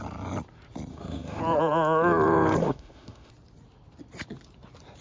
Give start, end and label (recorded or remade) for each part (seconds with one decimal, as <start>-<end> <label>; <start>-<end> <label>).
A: 0.0-0.9 recorded; 0.9-1.4 remade; 1.4-2.6 recorded; 2.6-3.3 remade; 3.3-5.0 recorded